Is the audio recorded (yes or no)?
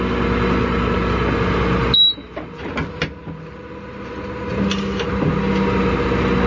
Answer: yes